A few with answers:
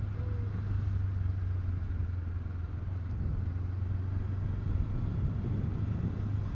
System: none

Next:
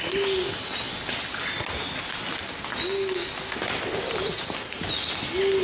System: none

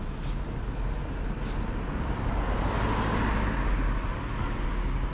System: none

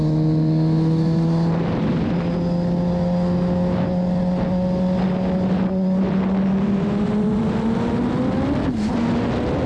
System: none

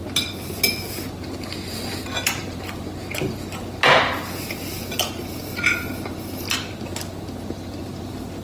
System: none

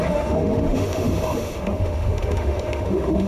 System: autoencoder, DAC-VAE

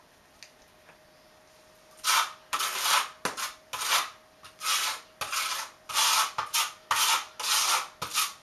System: none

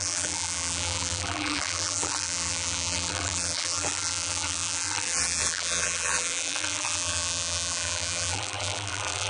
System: vocoder, BigVGAN v2